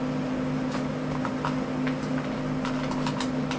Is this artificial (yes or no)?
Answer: no